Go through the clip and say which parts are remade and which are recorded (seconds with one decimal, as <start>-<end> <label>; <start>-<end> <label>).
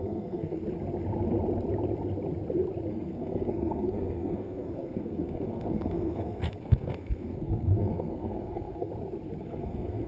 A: 0.0-0.6 remade; 0.6-2.9 recorded; 2.9-8.9 remade; 8.9-9.4 recorded; 9.4-10.1 remade